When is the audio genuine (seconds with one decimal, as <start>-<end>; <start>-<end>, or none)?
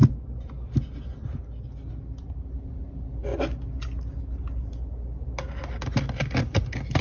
0.0-2.5; 3.3-7.0